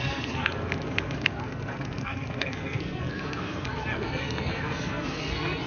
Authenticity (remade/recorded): remade